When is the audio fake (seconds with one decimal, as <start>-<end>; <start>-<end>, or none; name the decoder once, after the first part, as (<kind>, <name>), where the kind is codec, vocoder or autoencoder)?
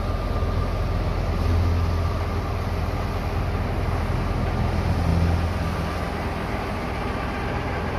none